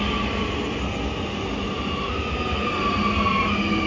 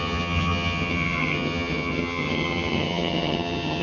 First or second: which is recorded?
first